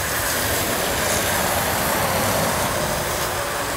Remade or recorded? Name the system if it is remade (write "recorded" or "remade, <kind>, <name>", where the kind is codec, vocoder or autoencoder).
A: remade, vocoder, BigVGAN v2